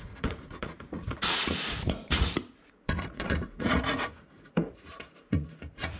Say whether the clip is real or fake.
fake